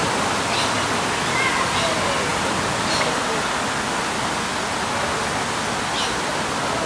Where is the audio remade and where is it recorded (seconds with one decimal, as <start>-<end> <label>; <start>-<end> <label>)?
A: 0.0-6.9 recorded